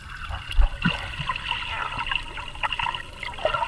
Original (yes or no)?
yes